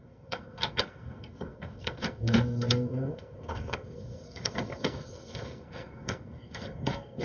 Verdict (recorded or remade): remade